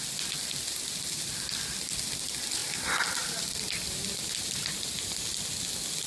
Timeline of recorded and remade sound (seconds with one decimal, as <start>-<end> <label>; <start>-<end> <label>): 0.0-6.1 recorded